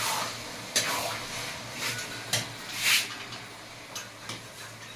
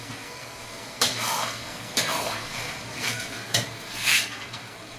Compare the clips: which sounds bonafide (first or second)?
first